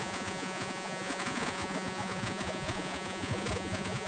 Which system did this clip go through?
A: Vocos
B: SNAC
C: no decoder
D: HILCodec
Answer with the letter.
A